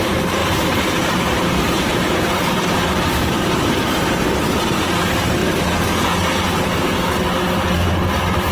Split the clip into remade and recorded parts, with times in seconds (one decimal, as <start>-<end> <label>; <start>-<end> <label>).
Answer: 0.0-5.4 remade; 5.4-8.5 recorded